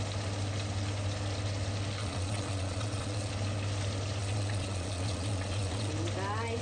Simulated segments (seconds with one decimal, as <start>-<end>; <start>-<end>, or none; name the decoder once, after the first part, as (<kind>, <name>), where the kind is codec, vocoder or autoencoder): 2.0-3.3 (vocoder, Vocos); 4.2-5.9